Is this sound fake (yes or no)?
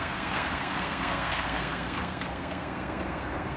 yes